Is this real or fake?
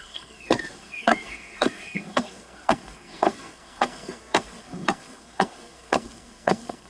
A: fake